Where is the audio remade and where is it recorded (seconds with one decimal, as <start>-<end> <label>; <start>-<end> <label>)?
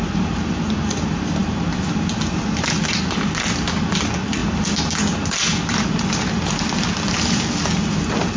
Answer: 0.0-8.4 recorded